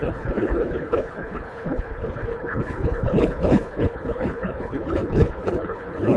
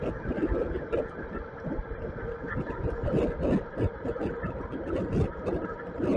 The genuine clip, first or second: second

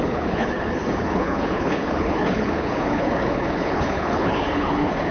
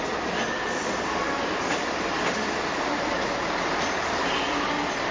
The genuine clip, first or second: second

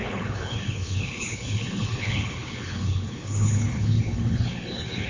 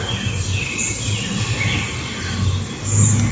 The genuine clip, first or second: second